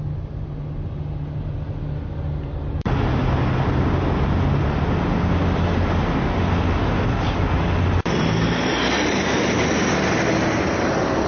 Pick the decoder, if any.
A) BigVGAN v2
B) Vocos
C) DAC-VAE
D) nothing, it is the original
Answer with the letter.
D